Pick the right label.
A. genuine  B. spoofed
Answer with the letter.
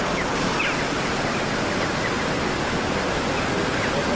A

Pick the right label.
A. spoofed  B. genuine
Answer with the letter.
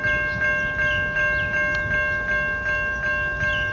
B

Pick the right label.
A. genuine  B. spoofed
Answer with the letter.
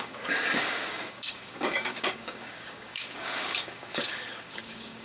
B